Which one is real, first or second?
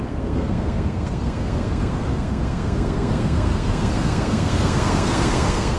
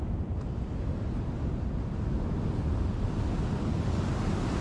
second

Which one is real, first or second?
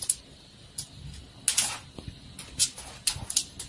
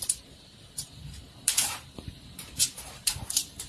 first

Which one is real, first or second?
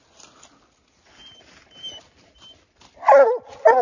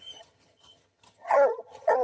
first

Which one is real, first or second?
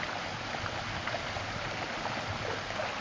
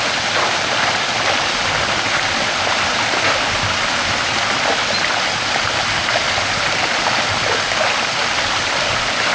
first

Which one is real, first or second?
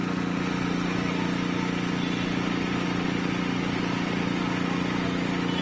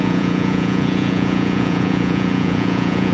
first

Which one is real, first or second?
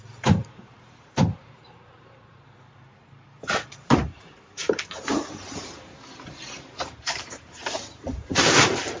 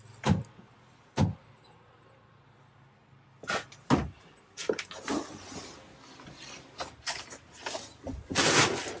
second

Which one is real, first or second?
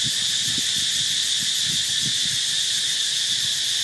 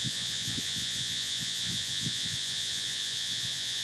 first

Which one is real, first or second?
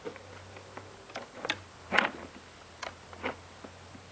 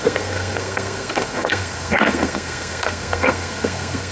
first